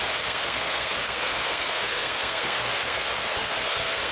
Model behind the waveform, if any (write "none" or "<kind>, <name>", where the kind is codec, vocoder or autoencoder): codec, SNAC